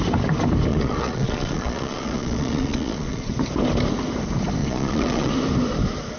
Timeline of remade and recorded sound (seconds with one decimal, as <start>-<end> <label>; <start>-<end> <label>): 0.0-0.7 recorded; 0.7-3.3 remade; 3.3-4.6 recorded; 4.6-5.3 remade; 5.3-6.2 recorded